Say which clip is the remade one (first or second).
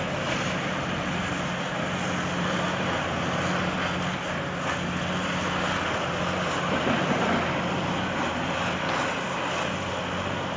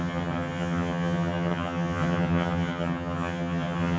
second